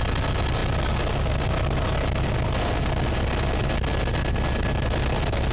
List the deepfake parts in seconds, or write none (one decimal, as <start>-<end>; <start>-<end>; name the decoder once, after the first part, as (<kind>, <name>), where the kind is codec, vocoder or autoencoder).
none